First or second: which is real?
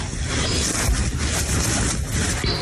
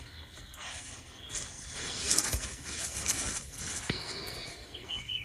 first